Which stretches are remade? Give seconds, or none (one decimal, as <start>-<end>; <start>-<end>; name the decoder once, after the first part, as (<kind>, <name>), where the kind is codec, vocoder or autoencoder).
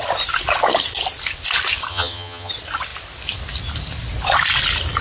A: 1.9-2.5 (vocoder, HiFi-GAN)